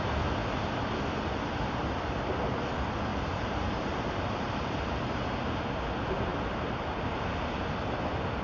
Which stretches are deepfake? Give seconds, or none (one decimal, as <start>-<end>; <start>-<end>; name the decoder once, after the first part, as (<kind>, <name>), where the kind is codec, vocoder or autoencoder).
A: 3.1-5.2 (vocoder, BigVGAN v2); 6.3-7.9